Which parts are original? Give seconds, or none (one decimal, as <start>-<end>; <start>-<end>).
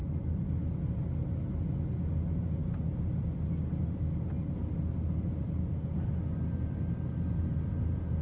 0.0-8.2